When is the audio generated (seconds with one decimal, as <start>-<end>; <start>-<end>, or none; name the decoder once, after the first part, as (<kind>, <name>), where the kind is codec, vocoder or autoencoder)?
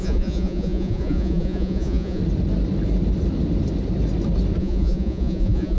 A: 0.0-2.2 (vocoder, Vocos); 4.6-5.8